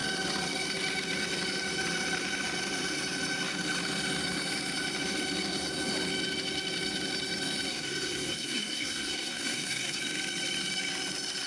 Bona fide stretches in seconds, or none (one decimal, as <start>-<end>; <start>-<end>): 0.0-7.7; 10.0-11.5